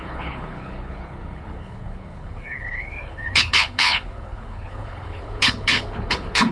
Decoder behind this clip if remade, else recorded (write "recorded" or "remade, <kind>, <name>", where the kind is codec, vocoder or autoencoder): remade, codec, HILCodec